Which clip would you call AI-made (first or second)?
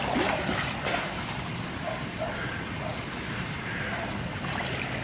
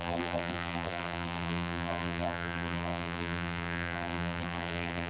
second